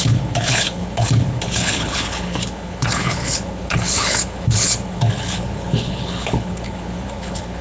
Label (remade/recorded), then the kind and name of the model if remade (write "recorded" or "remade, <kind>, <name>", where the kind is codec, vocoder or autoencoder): remade, codec, HILCodec